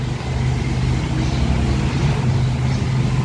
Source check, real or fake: real